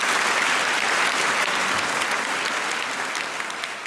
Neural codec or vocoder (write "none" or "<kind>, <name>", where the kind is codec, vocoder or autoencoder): none